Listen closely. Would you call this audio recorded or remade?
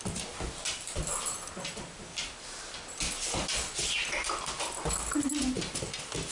recorded